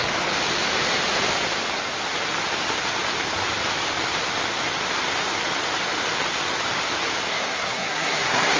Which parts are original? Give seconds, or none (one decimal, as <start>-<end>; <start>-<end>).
0.0-7.3